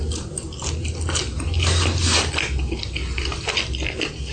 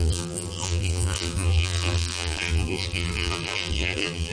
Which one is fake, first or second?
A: second